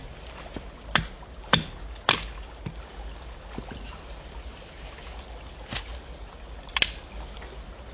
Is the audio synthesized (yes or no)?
no